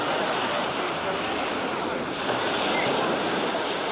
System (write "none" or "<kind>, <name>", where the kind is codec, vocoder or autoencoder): none